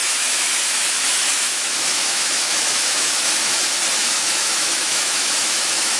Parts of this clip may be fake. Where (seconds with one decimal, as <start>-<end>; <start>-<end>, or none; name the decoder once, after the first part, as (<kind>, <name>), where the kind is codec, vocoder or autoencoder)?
0.0-3.6 (autoencoder, DAC-VAE); 4.0-6.0